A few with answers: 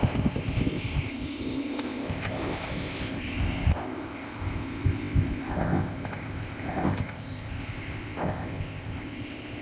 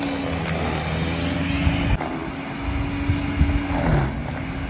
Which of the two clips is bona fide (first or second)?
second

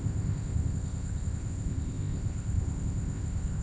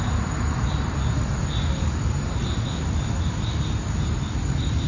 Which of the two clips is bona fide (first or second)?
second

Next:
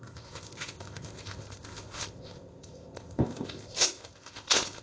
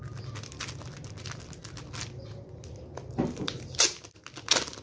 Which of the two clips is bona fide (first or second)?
second